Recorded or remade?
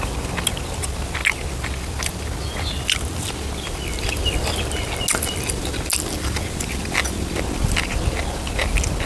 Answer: recorded